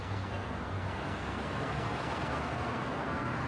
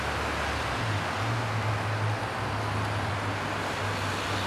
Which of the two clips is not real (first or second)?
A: first